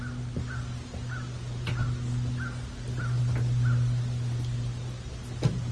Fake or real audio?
real